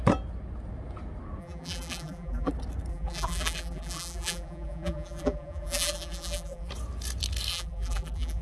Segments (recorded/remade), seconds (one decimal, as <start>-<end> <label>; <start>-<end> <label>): 0.0-1.4 recorded; 1.4-2.5 remade; 2.5-2.9 recorded; 2.9-6.7 remade; 6.7-7.5 recorded; 7.5-8.4 remade